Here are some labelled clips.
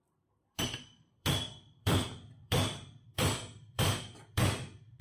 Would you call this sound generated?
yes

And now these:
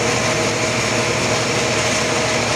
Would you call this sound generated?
no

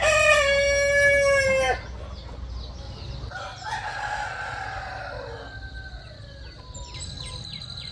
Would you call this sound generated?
no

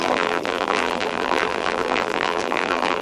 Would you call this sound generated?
yes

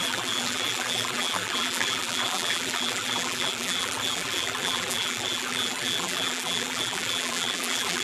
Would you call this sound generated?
yes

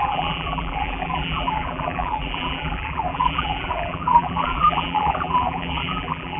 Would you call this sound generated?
yes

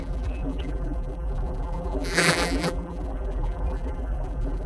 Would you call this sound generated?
yes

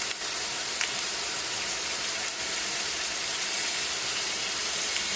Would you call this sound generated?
yes